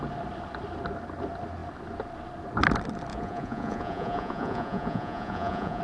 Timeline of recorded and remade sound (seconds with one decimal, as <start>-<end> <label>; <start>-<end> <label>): 0.0-3.1 recorded; 3.1-5.8 remade